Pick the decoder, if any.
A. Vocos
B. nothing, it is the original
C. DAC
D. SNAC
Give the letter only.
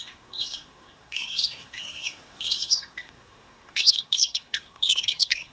D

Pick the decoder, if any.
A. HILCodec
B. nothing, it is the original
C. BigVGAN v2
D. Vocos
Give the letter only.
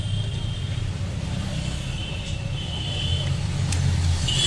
C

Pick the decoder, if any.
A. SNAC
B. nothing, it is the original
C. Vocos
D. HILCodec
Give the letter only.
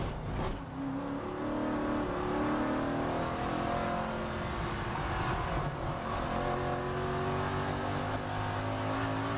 B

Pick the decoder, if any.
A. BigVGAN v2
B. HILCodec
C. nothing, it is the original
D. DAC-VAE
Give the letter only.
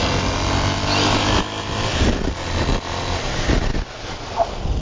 C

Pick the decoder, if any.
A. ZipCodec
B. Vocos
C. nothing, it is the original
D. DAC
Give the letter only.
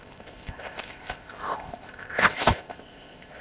A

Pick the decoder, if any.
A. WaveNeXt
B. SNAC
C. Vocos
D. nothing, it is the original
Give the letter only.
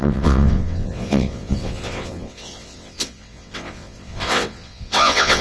A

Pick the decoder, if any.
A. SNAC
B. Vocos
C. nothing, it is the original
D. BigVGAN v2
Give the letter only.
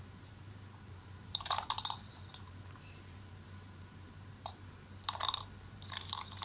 D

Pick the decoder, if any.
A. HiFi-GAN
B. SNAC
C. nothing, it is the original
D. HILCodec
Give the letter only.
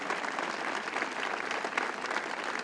C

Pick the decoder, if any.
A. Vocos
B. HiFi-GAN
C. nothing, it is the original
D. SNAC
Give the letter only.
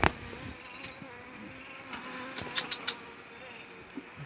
C